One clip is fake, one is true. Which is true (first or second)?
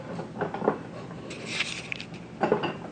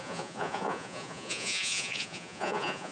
first